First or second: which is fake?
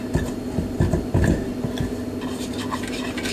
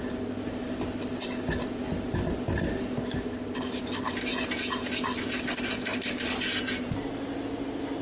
first